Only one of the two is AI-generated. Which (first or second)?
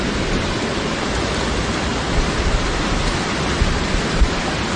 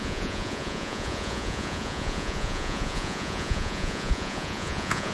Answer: second